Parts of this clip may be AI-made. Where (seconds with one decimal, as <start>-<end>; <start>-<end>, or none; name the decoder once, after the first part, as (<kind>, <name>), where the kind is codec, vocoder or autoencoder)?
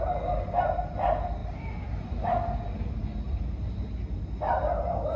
none